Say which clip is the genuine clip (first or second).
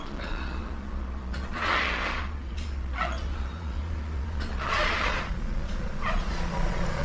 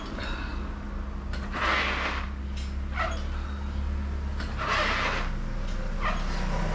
second